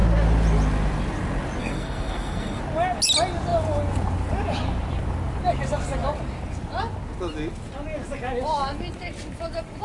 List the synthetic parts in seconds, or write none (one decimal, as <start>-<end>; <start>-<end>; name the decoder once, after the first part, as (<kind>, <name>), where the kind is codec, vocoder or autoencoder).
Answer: 1.6-2.6 (codec, SNAC)

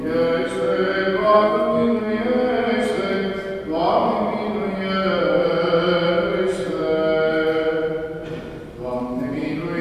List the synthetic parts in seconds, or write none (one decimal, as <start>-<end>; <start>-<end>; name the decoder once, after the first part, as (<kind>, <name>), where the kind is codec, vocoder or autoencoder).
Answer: 1.2-2.1 (codec, SNAC)

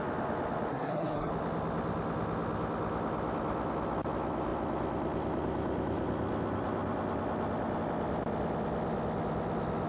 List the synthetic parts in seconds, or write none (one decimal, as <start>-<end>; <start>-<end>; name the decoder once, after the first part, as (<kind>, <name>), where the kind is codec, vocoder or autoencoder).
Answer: 0.7-1.3 (codec, SNAC)

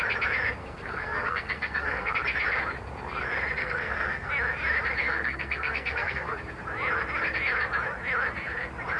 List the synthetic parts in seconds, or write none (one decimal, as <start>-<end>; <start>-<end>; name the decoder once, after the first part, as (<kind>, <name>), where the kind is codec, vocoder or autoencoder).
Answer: 0.6-2.1 (codec, SNAC); 3.6-4.3; 5.0-6.3

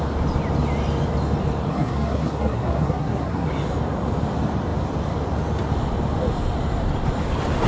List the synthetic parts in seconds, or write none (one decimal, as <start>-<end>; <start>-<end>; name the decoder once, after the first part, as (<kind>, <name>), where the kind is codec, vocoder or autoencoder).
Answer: 1.7-3.5 (codec, SNAC)

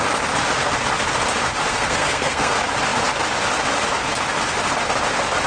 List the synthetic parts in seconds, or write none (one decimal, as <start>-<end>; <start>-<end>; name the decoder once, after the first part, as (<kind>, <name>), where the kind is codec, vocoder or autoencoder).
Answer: 1.7-2.5 (codec, SNAC)

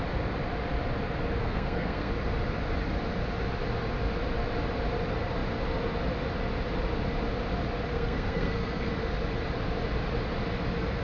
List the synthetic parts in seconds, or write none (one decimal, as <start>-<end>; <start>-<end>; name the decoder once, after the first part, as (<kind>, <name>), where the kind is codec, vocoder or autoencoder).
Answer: 1.4-2.1 (codec, SNAC); 7.9-8.9

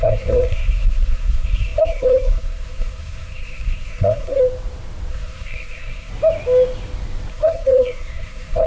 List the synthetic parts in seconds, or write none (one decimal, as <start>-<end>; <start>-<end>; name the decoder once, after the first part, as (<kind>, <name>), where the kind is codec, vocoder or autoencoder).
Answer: 0.0-4.4 (codec, SNAC); 5.1-6.1; 7.3-8.7